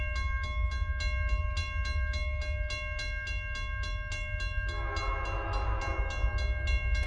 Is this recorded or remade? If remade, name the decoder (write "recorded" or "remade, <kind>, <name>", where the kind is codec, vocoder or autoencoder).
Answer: recorded